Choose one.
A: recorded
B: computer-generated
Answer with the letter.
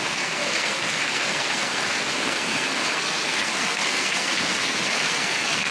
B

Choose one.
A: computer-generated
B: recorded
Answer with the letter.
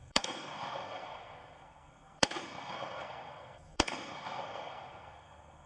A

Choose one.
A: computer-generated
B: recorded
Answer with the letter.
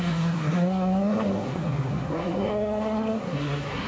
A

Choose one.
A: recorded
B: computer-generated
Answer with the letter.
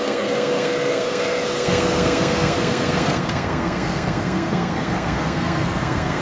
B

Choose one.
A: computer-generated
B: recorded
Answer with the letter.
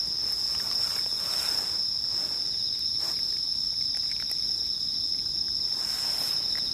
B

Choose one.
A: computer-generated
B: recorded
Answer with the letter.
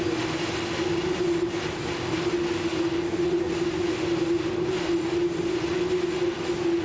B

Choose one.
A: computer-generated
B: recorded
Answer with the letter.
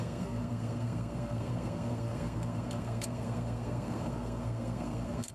A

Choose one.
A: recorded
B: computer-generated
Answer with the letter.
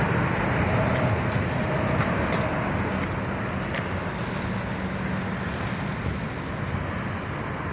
A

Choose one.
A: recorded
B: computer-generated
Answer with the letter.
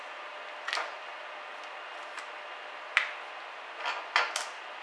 A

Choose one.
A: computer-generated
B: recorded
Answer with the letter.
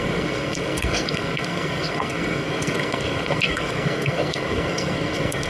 A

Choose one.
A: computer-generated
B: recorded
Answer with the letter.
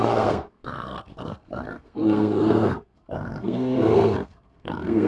A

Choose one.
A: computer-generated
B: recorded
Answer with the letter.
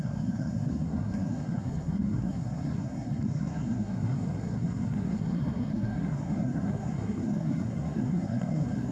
A